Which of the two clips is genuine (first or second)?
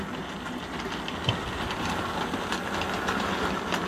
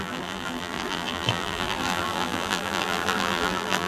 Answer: first